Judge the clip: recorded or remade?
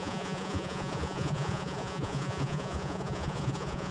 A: remade